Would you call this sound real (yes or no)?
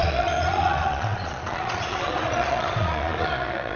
no